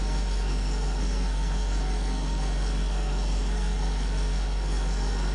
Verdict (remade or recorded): remade